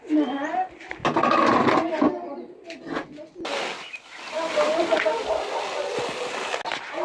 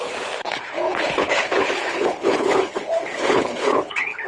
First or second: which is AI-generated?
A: second